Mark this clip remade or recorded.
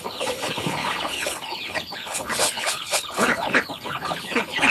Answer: remade